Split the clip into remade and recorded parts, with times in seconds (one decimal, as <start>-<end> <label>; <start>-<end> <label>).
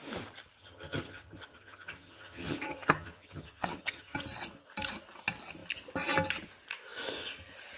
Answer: 0.0-0.6 recorded; 0.6-4.2 remade; 4.2-7.8 recorded